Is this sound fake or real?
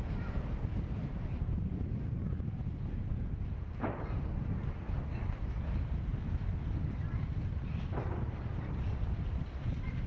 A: real